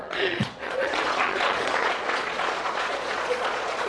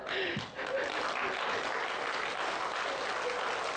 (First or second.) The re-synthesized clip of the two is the first